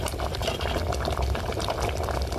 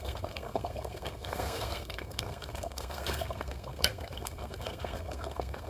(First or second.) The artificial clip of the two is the second